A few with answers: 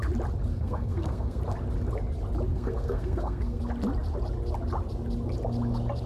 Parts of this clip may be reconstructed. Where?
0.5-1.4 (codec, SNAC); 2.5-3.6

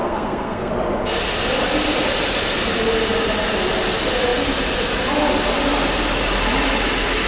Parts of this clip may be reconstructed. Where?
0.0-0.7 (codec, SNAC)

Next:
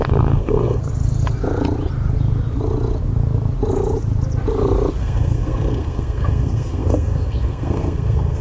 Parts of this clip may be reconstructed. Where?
0.0-0.8 (codec, SNAC); 5.0-8.4